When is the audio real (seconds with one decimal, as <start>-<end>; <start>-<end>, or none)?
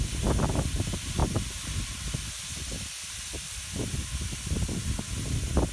0.0-5.7